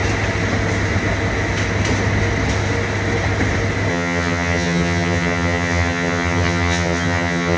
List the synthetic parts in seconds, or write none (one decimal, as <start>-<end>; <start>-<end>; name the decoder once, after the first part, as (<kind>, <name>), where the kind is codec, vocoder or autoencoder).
3.9-7.6 (vocoder, HiFi-GAN)